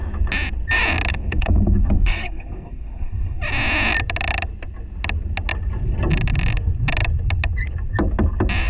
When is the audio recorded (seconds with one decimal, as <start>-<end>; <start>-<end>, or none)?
0.0-1.1; 3.4-8.7